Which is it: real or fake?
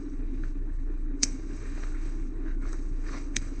fake